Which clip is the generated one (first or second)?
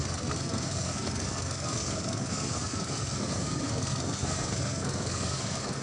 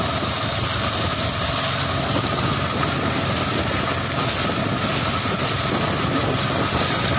first